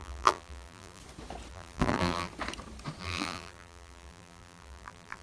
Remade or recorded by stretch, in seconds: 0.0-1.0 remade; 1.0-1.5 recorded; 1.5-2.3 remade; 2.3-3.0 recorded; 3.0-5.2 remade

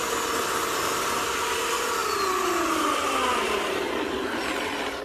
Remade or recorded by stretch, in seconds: 0.0-2.0 recorded; 2.0-5.0 remade